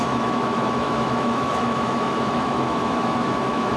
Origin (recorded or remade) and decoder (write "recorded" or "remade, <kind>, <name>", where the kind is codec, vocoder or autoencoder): remade, autoencoder, DAC-VAE